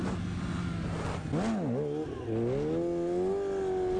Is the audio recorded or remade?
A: recorded